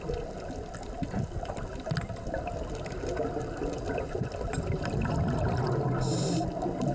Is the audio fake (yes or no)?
no